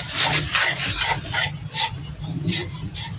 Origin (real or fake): real